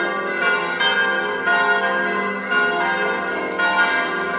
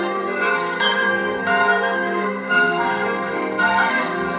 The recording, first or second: first